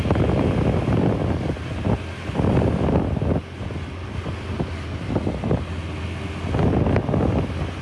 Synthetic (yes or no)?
no